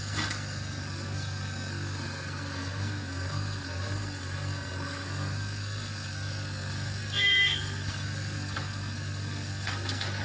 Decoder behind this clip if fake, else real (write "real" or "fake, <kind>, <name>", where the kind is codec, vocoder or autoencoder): fake, codec, SNAC